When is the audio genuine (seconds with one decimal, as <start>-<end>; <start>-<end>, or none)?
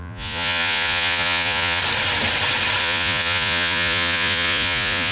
1.8-2.8